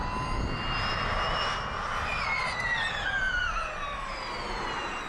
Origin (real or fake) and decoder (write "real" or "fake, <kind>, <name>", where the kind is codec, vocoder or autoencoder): real